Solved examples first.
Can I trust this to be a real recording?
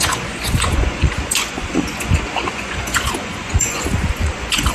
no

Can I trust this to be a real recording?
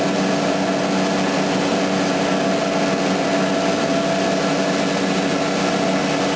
yes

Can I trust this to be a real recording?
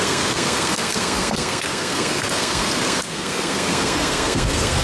no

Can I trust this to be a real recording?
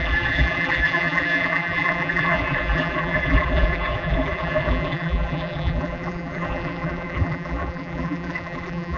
no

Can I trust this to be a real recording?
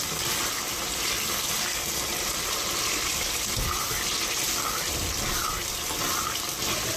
yes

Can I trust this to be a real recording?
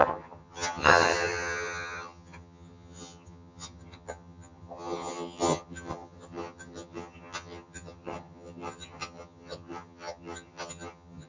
no